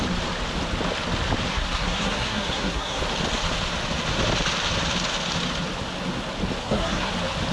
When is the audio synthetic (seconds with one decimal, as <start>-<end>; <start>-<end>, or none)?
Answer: 1.5-3.0; 6.6-7.1